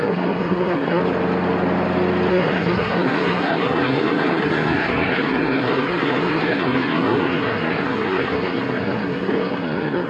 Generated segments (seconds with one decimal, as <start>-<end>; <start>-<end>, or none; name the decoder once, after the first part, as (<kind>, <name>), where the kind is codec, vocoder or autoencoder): 0.0-1.0 (codec, SNAC); 2.3-10.1